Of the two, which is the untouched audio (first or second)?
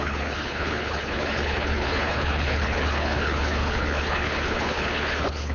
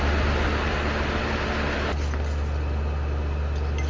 second